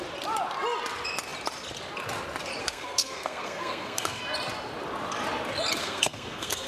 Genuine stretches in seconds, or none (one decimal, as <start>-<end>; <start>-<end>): 0.0-2.6; 4.2-5.8